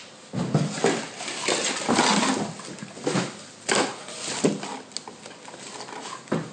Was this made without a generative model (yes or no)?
yes